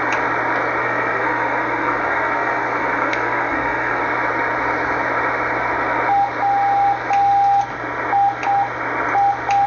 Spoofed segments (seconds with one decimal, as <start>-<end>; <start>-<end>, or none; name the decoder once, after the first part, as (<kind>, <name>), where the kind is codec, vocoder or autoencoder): 0.8-4.0 (codec, SNAC)